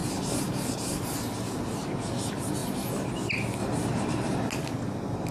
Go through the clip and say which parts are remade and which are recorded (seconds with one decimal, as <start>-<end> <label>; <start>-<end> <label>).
0.0-1.0 remade; 1.0-2.6 recorded; 2.6-3.1 remade; 3.1-3.6 recorded; 3.6-4.5 remade; 4.5-5.3 recorded